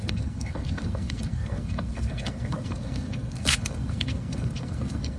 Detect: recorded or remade remade